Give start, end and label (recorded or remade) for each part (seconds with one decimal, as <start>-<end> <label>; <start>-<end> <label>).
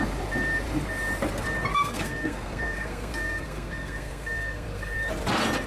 0.0-1.7 recorded; 1.7-5.1 remade; 5.1-5.7 recorded